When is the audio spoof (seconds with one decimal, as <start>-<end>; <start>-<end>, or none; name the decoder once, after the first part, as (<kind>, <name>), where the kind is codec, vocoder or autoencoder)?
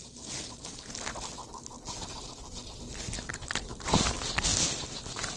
none